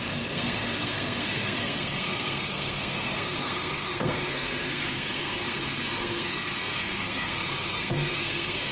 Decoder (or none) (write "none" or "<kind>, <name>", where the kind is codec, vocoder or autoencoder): codec, SNAC